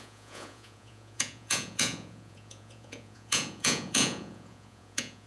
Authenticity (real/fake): fake